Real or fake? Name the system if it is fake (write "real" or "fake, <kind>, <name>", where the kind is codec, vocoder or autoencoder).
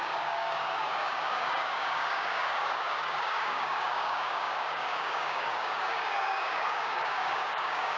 fake, codec, DAC